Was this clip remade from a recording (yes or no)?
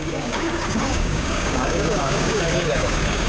yes